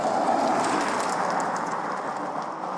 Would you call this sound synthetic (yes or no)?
no